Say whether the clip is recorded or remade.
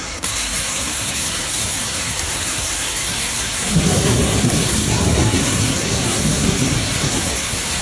remade